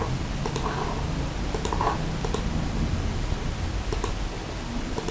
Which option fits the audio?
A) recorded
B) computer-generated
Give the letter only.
A